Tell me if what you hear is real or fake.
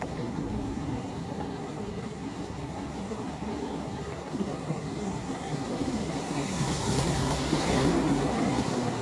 fake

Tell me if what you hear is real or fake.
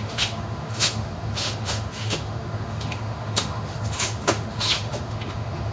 fake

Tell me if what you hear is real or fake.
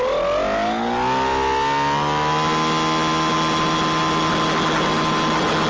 real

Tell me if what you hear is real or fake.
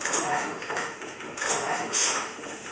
fake